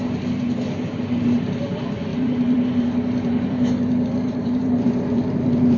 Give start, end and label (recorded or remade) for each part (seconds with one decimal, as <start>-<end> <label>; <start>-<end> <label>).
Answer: 0.0-5.8 remade